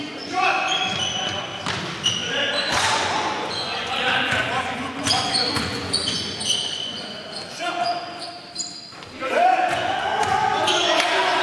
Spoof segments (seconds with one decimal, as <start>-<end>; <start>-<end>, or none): 0.0-1.5; 2.6-8.3; 9.0-11.4